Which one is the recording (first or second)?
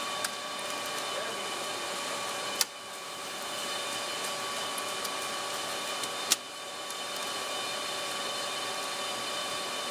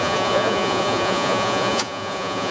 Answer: first